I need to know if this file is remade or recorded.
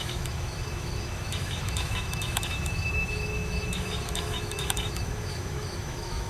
remade